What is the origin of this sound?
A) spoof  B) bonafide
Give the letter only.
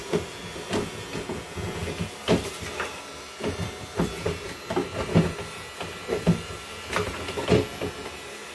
B